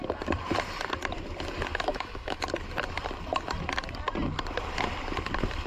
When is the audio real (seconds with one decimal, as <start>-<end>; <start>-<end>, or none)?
0.0-1.9; 2.4-5.7